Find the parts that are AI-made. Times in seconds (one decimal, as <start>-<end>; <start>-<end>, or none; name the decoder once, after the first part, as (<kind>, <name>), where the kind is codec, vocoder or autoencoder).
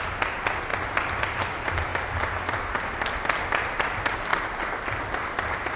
none